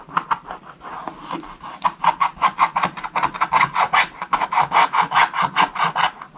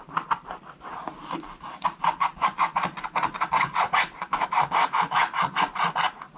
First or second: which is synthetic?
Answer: second